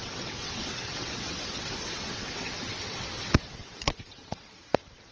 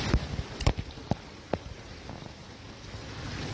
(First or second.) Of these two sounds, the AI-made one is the first